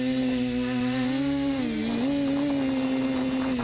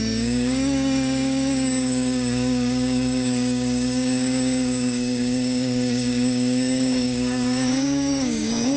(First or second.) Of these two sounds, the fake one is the second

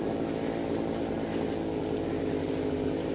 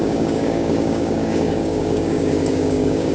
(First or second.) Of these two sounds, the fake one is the second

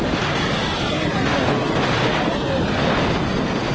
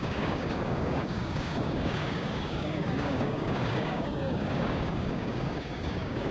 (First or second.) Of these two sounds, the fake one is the second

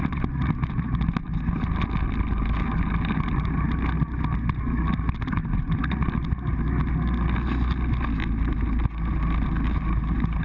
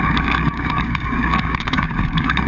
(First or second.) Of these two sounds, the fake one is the second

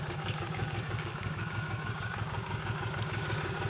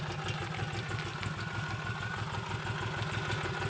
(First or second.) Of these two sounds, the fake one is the first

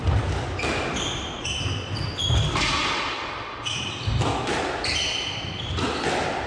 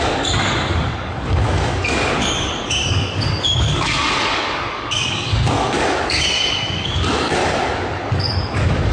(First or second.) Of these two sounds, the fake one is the second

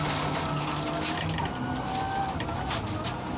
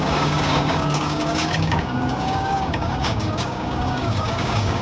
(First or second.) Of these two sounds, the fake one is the second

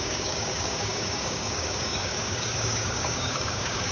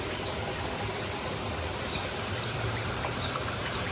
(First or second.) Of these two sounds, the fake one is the first